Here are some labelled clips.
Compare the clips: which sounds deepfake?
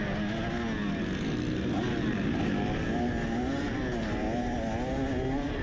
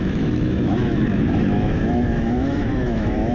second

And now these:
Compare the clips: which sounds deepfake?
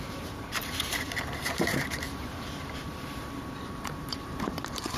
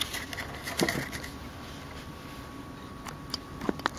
first